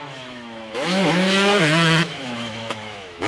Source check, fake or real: fake